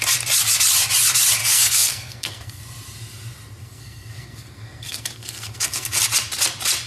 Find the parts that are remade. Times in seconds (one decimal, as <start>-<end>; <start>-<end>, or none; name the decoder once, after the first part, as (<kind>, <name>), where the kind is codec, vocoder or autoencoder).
1.4-2.6 (codec, SNAC); 3.6-6.0